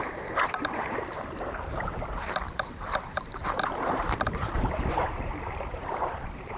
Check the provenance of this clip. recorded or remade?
remade